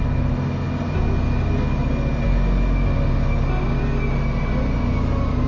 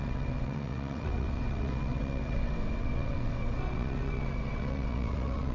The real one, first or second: first